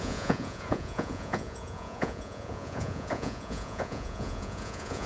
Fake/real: fake